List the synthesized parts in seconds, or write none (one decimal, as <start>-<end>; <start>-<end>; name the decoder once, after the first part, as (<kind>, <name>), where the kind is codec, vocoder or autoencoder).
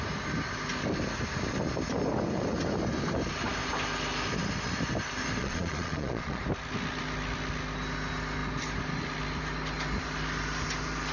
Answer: 5.4-6.4 (vocoder, Vocos)